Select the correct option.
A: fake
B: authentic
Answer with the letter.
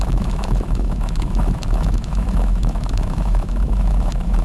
A